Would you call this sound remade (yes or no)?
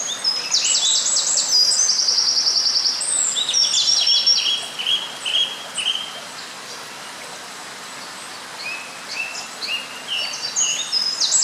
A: no